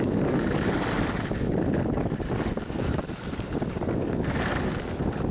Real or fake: real